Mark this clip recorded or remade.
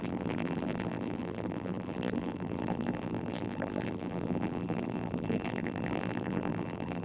remade